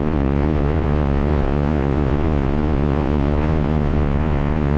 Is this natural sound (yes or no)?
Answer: no